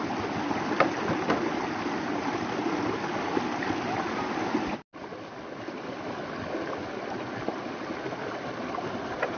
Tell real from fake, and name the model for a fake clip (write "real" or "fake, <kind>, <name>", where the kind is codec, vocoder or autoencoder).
real